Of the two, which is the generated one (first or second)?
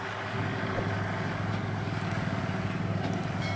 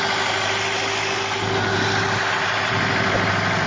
first